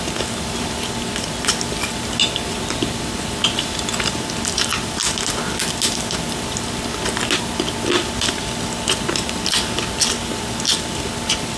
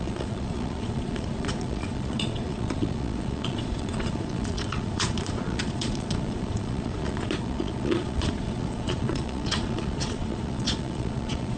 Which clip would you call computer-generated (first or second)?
second